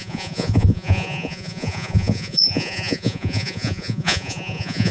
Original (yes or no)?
no